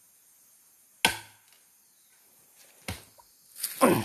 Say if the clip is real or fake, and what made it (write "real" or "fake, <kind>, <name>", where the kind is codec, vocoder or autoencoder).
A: real